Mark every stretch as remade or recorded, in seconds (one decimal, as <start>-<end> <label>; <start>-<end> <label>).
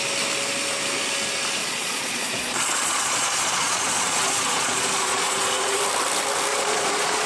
0.0-1.6 recorded; 1.6-5.8 remade; 5.8-6.5 recorded; 6.5-7.3 remade